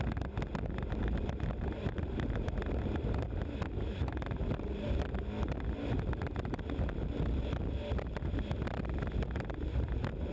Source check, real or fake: real